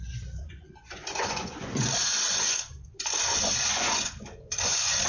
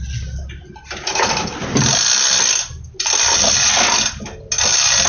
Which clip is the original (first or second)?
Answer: second